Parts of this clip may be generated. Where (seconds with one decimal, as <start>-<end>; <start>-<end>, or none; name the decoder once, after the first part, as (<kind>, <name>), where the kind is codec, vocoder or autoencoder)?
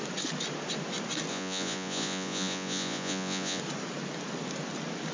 1.3-3.6 (vocoder, Vocos)